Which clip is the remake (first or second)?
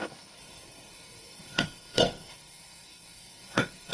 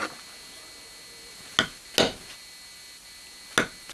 first